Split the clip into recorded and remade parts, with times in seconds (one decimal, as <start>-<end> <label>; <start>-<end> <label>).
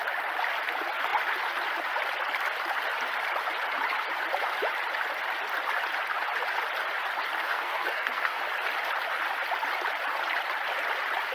0.0-7.4 recorded; 7.4-8.4 remade; 8.4-11.3 recorded